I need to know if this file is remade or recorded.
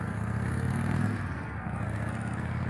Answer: remade